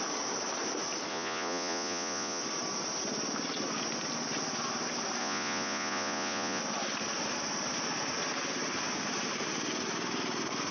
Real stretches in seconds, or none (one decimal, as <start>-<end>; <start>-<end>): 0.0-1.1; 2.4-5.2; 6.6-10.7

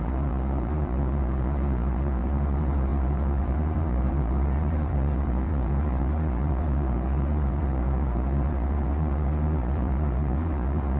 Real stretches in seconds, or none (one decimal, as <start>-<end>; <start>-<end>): none

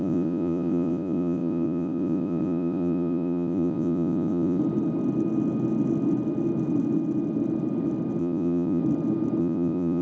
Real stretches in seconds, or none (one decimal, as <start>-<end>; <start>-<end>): 4.6-8.2; 8.8-9.4

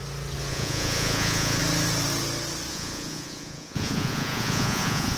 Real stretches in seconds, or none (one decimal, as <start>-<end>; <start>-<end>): 0.0-0.5; 1.6-2.7

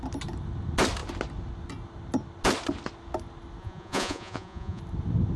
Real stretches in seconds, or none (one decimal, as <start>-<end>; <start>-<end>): 0.0-3.6; 4.8-5.4

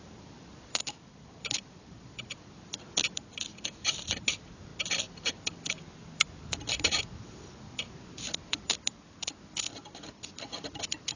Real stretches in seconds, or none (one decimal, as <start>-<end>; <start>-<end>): 0.0-11.2